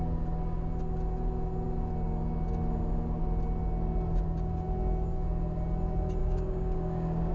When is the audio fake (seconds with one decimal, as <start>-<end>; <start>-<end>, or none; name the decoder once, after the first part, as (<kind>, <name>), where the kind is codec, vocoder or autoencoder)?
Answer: 6.2-7.3 (codec, DAC)